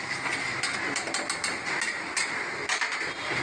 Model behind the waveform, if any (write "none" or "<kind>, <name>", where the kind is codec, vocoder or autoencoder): none